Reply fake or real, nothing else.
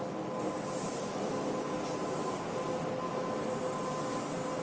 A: real